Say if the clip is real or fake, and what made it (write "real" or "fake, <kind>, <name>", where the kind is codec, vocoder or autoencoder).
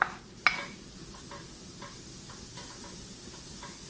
real